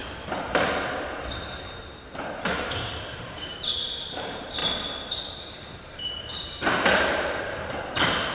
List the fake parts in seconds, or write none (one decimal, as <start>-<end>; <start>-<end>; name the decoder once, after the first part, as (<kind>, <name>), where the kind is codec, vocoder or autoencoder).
0.0-4.6 (vocoder, BigVGAN v2); 5.2-8.3